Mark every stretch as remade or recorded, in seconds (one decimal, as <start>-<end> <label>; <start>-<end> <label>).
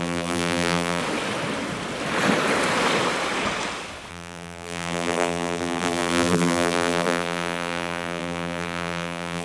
0.0-1.0 remade; 1.0-4.1 recorded; 4.1-9.4 remade